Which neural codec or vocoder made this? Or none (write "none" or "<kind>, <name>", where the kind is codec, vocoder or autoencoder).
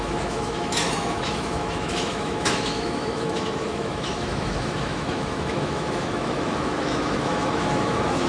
autoencoder, DAC-VAE